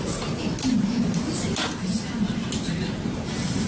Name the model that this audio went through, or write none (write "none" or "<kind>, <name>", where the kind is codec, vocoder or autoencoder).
none